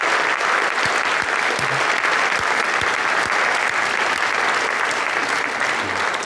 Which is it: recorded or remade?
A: recorded